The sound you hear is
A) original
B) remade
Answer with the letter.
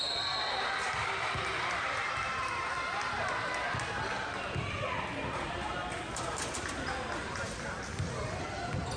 A